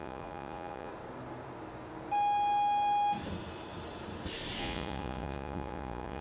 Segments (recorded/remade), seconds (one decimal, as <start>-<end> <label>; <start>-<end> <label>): 0.0-0.9 remade; 0.9-4.6 recorded; 4.6-6.2 remade